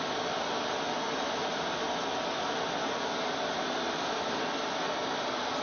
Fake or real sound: real